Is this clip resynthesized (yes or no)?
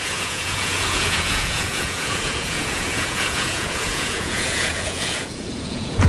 yes